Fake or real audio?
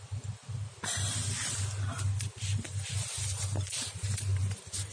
real